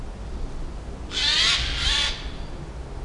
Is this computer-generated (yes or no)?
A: no